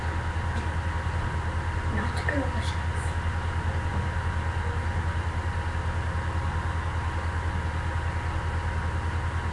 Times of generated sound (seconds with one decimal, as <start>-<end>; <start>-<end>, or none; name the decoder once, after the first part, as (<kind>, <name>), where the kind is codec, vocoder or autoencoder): none